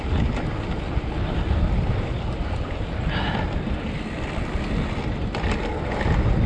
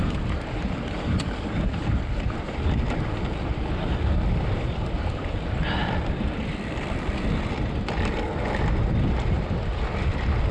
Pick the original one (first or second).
first